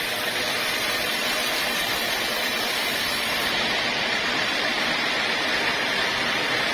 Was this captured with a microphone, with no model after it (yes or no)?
no